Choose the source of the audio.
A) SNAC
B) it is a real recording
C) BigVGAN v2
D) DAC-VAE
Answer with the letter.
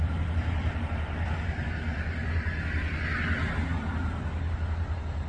B